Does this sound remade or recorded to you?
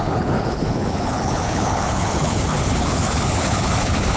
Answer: remade